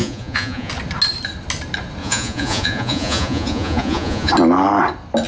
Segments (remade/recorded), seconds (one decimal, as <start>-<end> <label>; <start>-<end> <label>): 0.0-0.7 remade; 0.7-2.0 recorded; 2.0-4.3 remade; 4.3-5.3 recorded